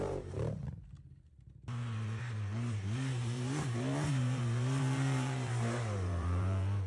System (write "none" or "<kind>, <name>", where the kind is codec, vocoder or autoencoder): vocoder, BigVGAN v2